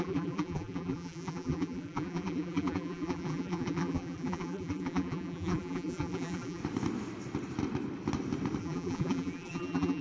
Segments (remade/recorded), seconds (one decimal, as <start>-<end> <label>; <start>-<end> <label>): 0.0-6.6 remade; 6.6-8.6 recorded; 8.6-10.0 remade